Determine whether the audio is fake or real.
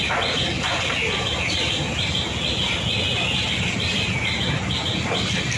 real